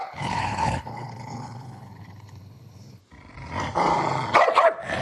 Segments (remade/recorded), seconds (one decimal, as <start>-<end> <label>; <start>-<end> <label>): 0.0-3.0 remade; 3.0-5.0 recorded